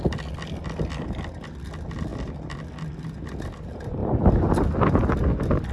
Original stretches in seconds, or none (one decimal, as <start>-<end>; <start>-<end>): 0.0-5.7